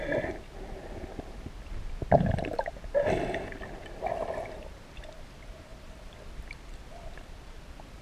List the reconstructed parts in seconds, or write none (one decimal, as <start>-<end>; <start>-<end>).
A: none